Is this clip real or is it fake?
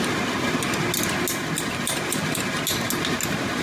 real